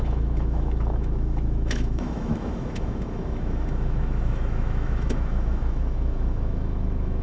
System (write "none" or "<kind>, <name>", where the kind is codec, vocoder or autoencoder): autoencoder, DAC-VAE